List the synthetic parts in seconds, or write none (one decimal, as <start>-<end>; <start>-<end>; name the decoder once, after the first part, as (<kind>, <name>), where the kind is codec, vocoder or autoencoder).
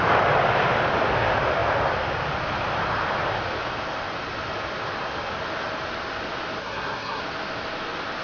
6.6-7.2 (codec, SNAC)